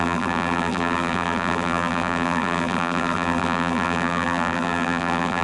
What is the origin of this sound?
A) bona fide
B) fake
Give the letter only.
B